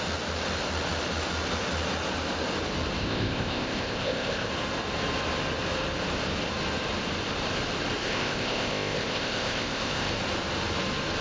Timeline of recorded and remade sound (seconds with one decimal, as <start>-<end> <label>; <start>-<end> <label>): 0.0-3.0 recorded; 3.0-4.5 remade; 4.5-8.0 recorded; 8.0-10.1 remade; 10.1-11.2 recorded